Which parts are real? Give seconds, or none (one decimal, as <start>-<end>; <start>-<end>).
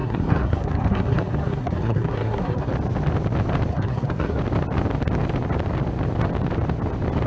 2.7-3.7; 4.4-7.3